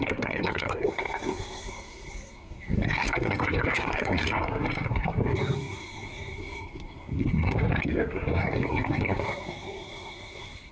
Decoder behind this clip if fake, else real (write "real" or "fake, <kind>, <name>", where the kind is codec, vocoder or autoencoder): fake, codec, SNAC